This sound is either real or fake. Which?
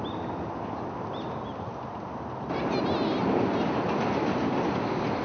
real